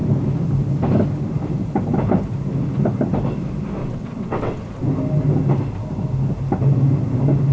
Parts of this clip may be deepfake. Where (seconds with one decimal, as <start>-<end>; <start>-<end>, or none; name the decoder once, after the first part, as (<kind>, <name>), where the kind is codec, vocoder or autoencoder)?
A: 3.8-4.6 (vocoder, WaveNeXt)